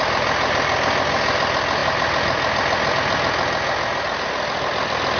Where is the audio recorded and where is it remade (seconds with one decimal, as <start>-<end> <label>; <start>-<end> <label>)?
0.0-5.2 recorded

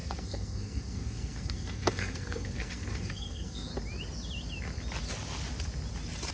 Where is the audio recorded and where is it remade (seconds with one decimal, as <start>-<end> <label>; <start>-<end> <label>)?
0.0-3.7 remade; 3.7-6.3 recorded